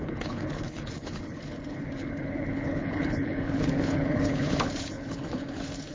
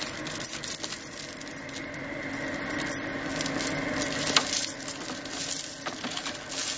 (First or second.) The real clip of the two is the second